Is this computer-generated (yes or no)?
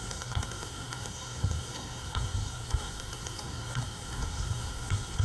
yes